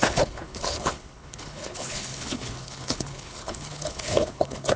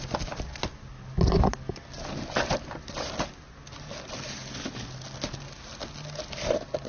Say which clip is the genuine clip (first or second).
second